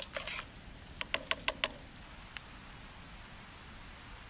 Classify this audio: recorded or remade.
recorded